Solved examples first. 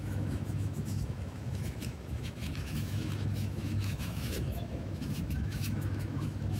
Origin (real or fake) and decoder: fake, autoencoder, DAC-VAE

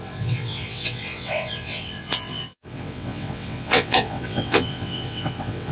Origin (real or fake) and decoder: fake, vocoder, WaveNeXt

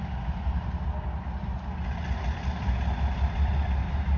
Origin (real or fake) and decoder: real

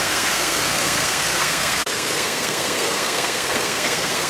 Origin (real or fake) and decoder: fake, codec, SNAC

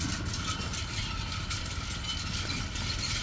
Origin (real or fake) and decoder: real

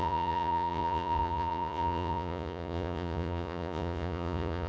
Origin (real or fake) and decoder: fake, vocoder, Vocos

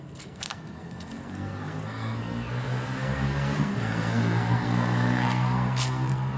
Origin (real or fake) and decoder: fake, codec, SNAC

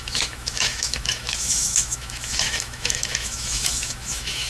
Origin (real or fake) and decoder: fake, autoencoder, DAC-VAE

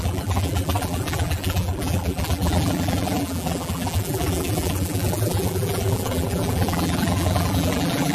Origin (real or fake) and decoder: fake, vocoder, BigVGAN v2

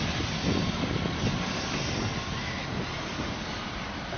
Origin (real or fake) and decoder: real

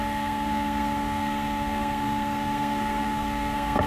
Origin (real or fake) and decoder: fake, codec, SNAC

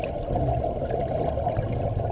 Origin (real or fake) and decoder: real